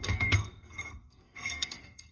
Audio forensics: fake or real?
fake